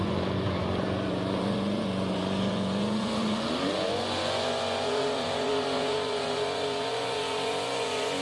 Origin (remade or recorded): remade